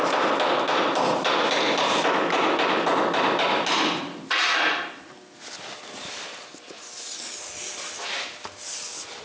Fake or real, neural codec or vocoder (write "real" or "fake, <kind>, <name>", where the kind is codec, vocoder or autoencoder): real